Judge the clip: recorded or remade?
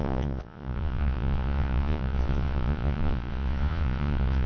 remade